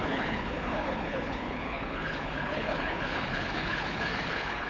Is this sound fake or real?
fake